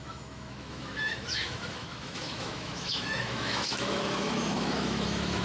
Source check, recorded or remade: remade